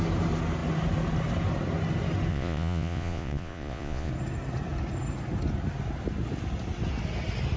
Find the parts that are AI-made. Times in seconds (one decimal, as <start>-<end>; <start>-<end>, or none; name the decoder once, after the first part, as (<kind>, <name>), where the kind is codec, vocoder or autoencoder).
2.3-4.1 (vocoder, Vocos)